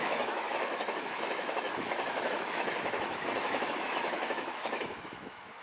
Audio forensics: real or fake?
fake